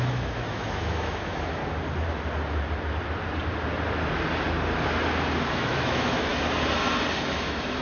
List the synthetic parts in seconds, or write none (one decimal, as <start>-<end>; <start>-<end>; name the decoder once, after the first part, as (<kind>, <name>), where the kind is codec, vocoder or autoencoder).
0.0-1.6 (autoencoder, DAC-VAE); 5.5-6.3; 7.3-7.8